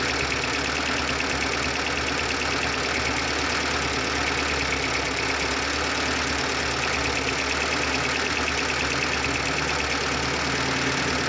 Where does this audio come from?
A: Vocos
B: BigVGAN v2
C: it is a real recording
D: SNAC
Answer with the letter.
C